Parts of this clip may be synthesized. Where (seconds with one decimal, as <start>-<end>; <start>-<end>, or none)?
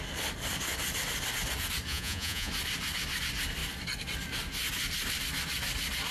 1.9-2.5